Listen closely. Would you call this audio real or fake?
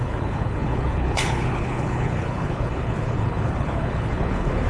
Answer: fake